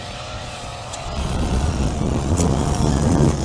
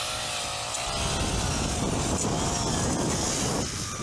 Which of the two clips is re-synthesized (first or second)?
first